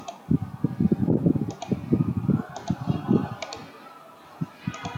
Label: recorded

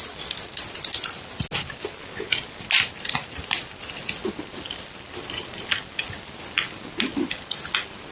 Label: recorded